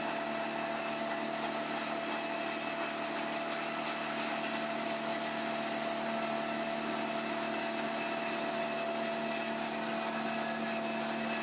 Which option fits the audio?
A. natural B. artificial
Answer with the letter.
A